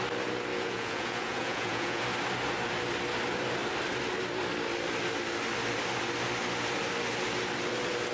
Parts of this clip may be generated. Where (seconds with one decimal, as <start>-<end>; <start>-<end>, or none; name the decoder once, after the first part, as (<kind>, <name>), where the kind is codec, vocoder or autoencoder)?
0.5-2.0 (vocoder, Vocos)